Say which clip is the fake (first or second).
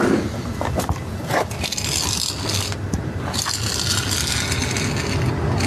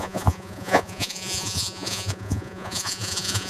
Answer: second